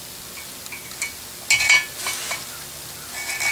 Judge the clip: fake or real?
real